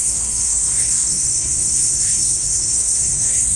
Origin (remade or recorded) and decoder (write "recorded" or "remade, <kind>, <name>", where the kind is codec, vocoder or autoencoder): remade, codec, SNAC